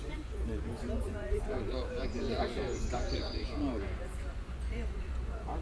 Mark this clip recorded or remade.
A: remade